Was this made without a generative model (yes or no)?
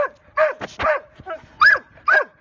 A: yes